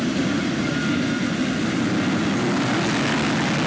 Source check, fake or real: real